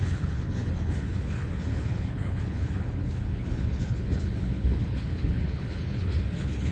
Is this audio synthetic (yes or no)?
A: yes